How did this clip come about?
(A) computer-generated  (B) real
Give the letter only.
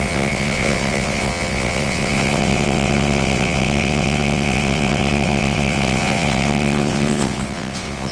A